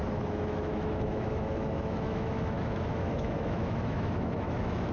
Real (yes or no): no